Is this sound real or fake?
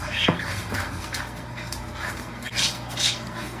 fake